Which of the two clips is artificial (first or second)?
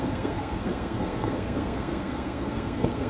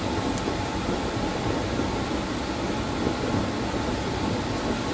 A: first